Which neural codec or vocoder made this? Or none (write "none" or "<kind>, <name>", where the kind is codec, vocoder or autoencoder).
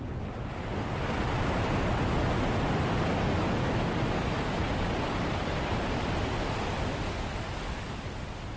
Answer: none